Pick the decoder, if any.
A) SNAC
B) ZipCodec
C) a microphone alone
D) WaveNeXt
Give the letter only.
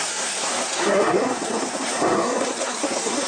A